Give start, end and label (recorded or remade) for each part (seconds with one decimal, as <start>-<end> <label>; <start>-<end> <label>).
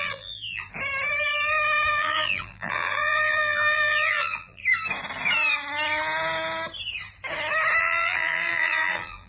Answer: 0.0-0.6 remade; 0.6-1.9 recorded; 1.9-4.6 remade; 4.6-7.8 recorded; 7.8-9.3 remade